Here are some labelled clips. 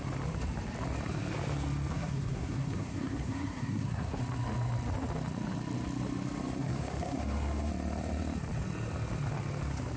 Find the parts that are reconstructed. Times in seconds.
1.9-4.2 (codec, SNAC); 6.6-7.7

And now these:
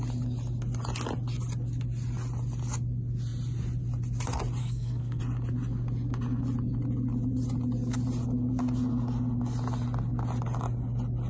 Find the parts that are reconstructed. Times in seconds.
4.6-5.2 (codec, SNAC)

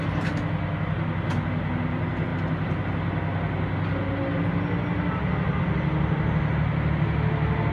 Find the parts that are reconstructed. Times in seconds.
none

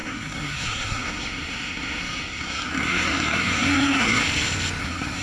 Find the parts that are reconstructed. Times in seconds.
0.0-4.2 (codec, SNAC); 4.8-5.2

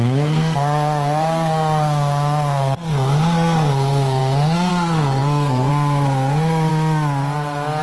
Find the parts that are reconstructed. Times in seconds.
0.0-6.7 (codec, SNAC)

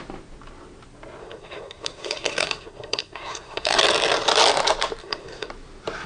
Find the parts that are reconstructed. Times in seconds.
1.2-3.8 (codec, SNAC); 5.0-5.5